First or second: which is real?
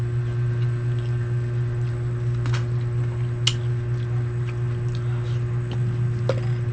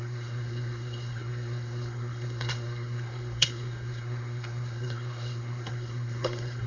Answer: first